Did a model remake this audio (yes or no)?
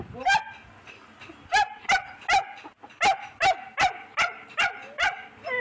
no